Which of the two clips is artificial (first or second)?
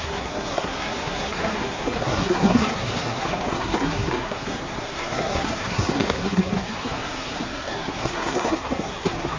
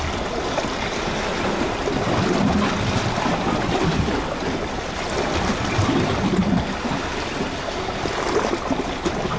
first